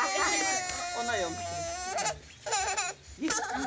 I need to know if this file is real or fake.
real